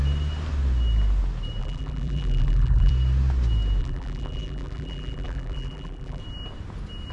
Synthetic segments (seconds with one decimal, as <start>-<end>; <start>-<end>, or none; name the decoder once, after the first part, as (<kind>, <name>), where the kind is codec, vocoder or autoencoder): 1.6-2.9 (vocoder, BigVGAN v2); 3.8-6.2